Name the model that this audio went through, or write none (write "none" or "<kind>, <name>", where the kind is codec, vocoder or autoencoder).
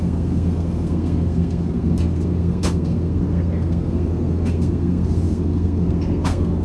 codec, SNAC